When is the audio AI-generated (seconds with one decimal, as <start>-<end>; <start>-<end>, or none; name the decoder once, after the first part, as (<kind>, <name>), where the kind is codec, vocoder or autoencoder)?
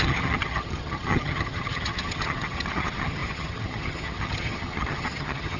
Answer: 0.0-5.6 (vocoder, HiFi-GAN)